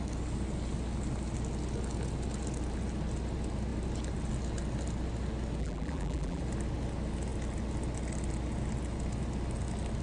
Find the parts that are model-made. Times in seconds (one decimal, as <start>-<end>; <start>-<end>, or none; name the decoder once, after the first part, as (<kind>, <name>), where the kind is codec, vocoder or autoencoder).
5.6-6.4 (vocoder, BigVGAN v2)